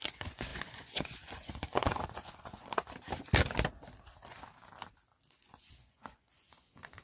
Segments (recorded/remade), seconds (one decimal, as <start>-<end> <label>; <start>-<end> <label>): 0.0-2.8 remade; 2.8-5.3 recorded; 5.3-7.0 remade